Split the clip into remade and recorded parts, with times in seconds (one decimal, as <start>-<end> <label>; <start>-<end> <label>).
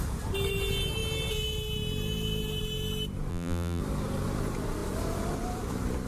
0.0-3.3 recorded; 3.3-3.8 remade; 3.8-6.1 recorded